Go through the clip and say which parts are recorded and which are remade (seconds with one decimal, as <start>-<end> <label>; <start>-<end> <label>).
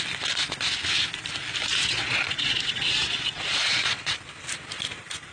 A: 0.0-1.7 recorded; 1.7-4.1 remade; 4.1-5.3 recorded